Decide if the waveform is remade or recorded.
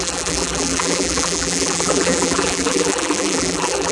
remade